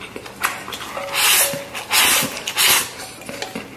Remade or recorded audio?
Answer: recorded